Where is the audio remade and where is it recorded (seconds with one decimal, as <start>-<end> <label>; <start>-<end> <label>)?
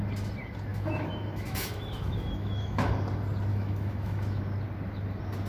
0.0-0.7 recorded; 0.7-2.9 remade; 2.9-3.5 recorded; 3.5-4.4 remade; 4.4-5.5 recorded